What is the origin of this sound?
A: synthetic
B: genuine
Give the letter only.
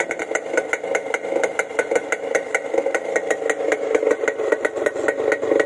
B